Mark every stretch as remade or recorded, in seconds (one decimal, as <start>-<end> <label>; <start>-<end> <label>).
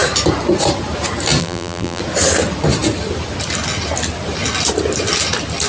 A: 0.0-1.4 recorded; 1.4-2.0 remade; 2.0-5.7 recorded